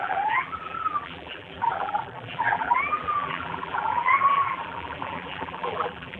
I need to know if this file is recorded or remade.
remade